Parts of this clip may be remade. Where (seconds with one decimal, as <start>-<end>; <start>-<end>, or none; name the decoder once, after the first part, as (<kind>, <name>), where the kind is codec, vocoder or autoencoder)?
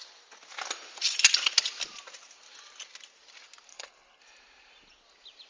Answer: 3.7-4.2 (codec, HILCodec)